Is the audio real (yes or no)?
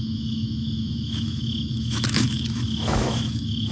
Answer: no